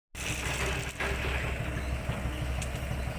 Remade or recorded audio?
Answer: recorded